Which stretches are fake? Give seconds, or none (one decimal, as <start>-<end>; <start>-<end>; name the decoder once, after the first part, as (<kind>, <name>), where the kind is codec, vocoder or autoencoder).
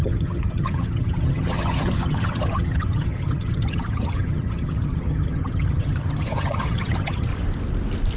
0.0-7.3 (vocoder, HiFi-GAN)